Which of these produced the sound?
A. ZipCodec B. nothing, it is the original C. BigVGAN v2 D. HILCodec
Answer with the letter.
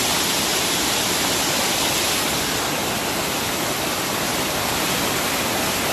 B